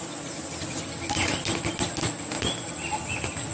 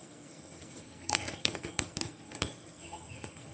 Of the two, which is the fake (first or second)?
second